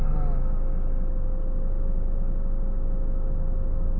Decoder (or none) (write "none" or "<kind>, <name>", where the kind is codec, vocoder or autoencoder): none